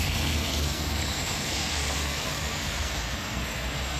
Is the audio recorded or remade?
remade